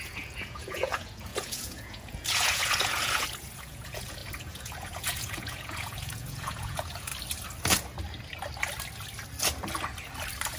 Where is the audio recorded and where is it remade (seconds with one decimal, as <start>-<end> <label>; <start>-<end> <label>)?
0.0-7.1 remade; 7.1-10.6 recorded